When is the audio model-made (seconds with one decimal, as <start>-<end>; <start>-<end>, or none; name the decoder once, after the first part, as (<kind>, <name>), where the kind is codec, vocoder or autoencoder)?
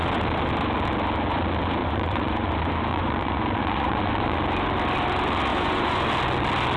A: 1.8-2.5 (vocoder, Vocos); 2.9-4.4; 5.5-6.1